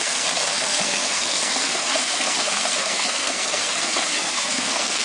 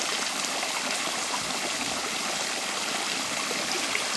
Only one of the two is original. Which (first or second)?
second